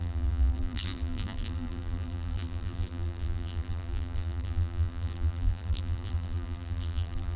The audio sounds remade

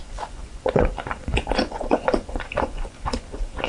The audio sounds remade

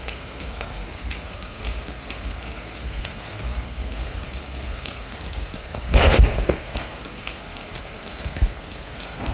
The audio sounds remade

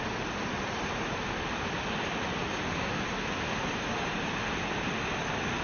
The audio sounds recorded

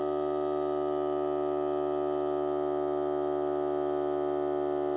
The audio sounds recorded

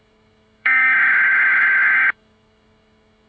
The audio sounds remade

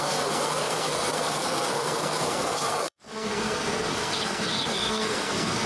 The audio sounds remade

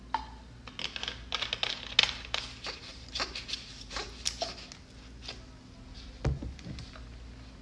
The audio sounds recorded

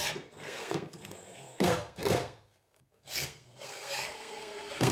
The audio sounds remade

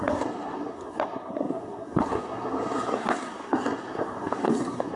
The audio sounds remade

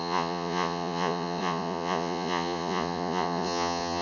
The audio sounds remade